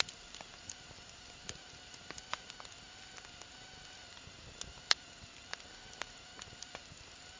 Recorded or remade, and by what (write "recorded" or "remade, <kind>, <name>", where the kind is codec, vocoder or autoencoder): recorded